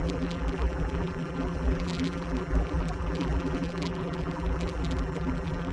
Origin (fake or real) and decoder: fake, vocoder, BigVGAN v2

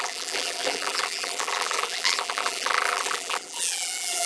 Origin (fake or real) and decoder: fake, vocoder, BigVGAN v2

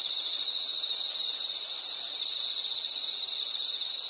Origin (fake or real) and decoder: fake, vocoder, BigVGAN v2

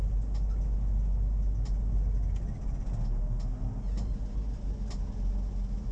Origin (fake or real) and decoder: real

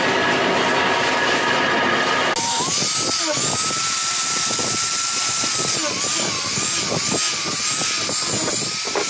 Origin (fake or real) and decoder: real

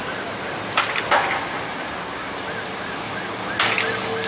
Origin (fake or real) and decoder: real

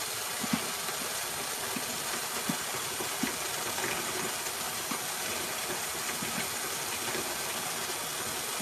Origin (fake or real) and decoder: real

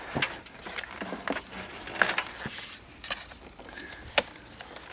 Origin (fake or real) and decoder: real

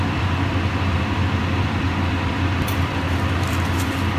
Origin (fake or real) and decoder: fake, vocoder, BigVGAN v2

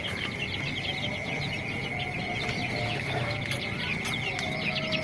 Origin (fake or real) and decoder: fake, vocoder, BigVGAN v2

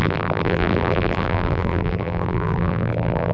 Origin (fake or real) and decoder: fake, vocoder, BigVGAN v2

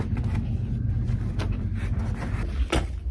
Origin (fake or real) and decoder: real